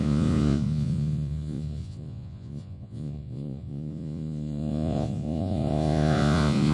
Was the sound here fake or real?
fake